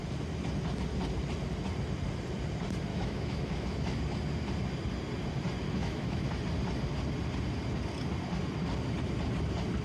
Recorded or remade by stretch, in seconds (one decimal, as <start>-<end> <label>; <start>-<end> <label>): 0.0-2.9 recorded; 2.9-4.0 remade; 4.0-5.8 recorded; 5.8-6.3 remade; 6.3-9.8 recorded